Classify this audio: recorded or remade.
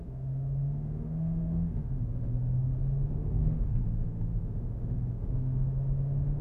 remade